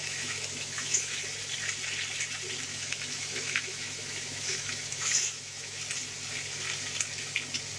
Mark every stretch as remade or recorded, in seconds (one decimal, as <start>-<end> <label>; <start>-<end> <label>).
0.0-1.2 remade; 1.2-2.7 recorded; 2.7-5.8 remade; 5.8-7.8 recorded